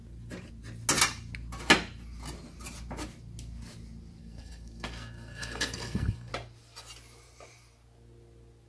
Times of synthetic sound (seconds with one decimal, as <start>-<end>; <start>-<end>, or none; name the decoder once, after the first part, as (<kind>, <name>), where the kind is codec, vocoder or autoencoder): 4.2-6.3 (codec, SNAC)